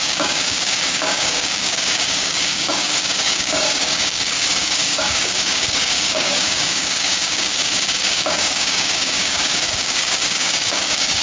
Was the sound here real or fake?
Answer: fake